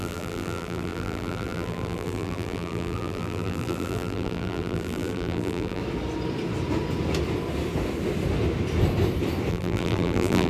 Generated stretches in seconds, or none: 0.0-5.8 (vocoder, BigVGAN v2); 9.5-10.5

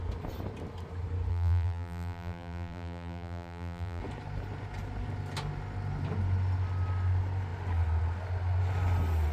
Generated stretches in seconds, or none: 1.3-4.0 (vocoder, BigVGAN v2)

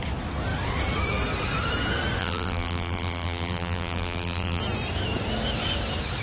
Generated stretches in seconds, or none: 2.2-4.6 (vocoder, BigVGAN v2)

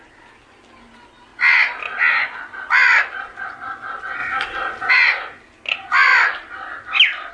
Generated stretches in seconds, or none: none

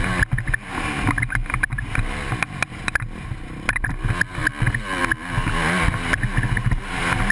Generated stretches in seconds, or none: 1.4-3.8 (vocoder, BigVGAN v2)